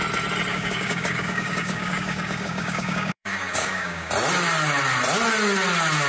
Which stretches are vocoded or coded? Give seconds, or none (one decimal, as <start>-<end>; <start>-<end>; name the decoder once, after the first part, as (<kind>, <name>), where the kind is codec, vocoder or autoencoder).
0.5-4.1 (codec, DAC)